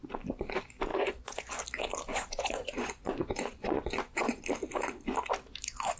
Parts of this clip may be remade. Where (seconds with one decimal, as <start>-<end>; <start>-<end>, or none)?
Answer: 0.9-1.5; 2.1-4.4